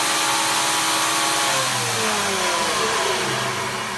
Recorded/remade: recorded